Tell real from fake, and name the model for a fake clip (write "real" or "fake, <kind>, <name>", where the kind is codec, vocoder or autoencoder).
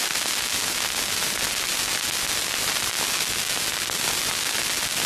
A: real